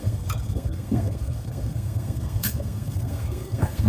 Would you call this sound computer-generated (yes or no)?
yes